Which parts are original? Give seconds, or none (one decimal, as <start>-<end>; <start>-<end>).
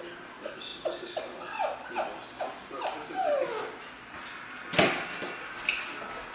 0.0-6.3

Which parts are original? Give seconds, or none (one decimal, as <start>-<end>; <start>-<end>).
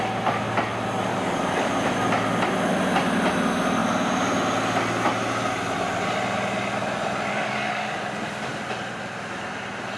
0.0-1.1; 1.7-7.3; 8.0-10.0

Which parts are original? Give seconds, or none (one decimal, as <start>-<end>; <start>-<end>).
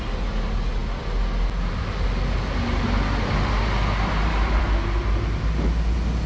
0.0-6.3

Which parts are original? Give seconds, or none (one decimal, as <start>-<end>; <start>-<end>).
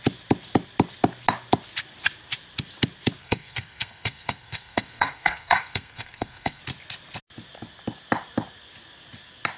0.0-3.2; 6.6-9.6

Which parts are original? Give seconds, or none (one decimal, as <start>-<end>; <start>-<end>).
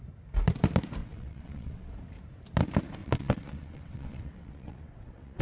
0.0-1.0; 1.9-3.0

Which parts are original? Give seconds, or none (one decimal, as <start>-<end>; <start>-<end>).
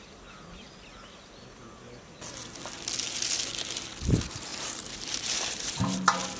0.0-4.5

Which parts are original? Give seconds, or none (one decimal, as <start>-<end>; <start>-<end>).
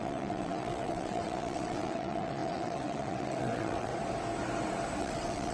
3.9-5.0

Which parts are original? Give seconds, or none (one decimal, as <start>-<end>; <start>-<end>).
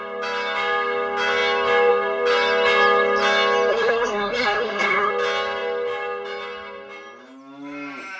0.0-3.7; 5.1-8.2